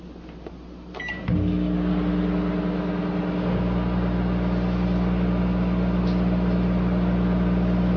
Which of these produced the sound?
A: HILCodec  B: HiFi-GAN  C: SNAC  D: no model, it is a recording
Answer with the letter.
D